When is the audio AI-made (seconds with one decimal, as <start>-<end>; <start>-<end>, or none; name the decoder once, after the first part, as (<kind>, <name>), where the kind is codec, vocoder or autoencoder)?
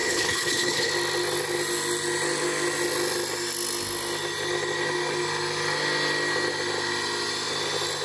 0.0-0.9 (codec, HILCodec)